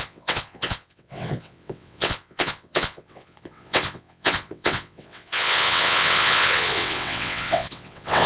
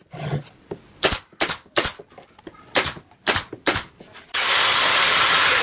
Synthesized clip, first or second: first